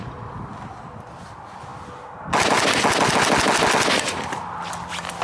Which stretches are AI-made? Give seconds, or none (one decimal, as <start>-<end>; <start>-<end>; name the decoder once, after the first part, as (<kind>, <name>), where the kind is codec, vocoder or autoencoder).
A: none